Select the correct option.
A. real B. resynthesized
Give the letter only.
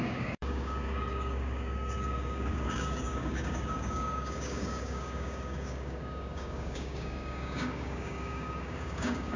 B